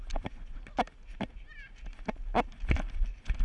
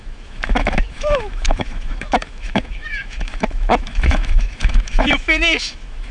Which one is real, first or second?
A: first